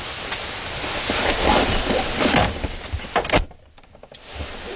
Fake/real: real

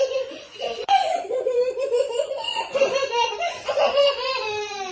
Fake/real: fake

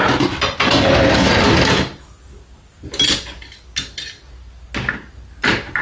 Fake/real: real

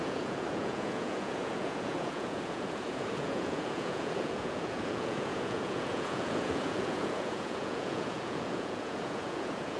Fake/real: fake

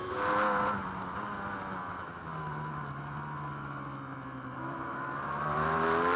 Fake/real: real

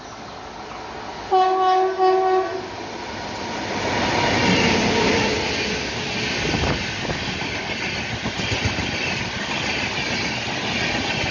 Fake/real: real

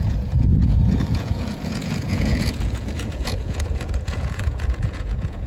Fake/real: fake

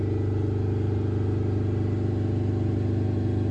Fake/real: real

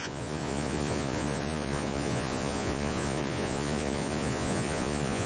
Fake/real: fake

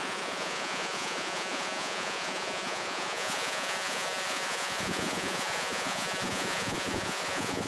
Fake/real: fake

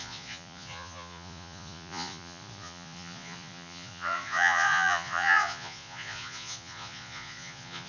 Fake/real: fake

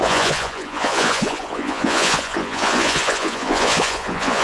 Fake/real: fake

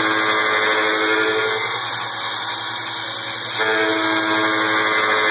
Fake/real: real